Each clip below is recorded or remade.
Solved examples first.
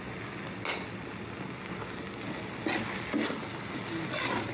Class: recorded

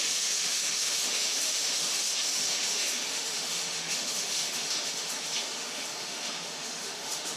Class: remade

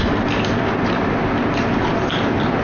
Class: recorded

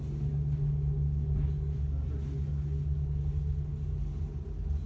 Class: recorded